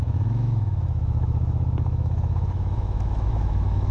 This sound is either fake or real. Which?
fake